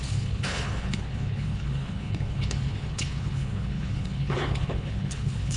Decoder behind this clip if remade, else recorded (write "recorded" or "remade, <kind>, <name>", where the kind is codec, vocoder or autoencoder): remade, codec, HILCodec